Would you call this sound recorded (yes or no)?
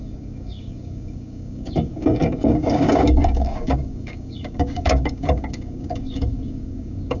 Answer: no